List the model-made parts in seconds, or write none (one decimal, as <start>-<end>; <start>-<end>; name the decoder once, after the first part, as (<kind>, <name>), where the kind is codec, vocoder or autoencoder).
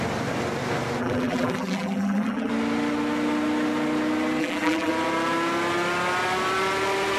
1.0-2.5 (vocoder, BigVGAN v2); 4.4-4.9